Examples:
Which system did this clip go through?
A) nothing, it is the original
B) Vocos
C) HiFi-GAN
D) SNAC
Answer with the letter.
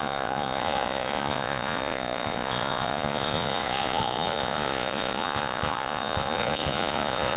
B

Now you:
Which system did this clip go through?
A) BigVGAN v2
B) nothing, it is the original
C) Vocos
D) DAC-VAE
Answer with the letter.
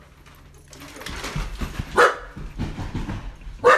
B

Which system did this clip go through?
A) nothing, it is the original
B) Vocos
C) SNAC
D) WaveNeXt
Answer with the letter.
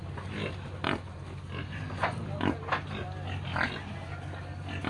A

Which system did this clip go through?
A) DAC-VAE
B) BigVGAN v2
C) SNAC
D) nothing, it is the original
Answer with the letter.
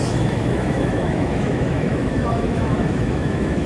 A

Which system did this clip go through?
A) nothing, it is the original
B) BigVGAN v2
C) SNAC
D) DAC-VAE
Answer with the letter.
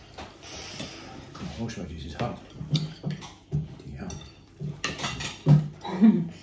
A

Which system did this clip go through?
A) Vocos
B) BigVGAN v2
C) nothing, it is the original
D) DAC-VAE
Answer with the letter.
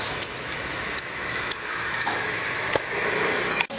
D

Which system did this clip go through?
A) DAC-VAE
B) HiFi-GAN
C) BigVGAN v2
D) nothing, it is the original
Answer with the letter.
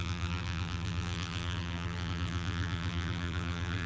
C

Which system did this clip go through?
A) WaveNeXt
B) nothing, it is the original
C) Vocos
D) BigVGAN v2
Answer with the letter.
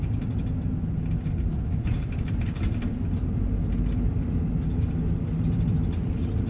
B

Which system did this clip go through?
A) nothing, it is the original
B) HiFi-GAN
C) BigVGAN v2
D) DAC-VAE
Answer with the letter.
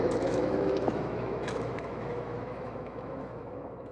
D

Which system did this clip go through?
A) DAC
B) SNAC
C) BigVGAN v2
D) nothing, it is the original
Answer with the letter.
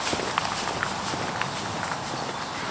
D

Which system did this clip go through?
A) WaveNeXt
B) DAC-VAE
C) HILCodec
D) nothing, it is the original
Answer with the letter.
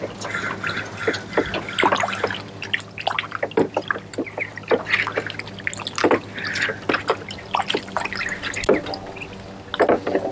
D